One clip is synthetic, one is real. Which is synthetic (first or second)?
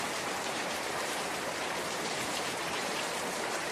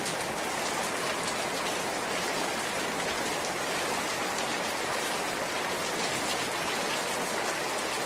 first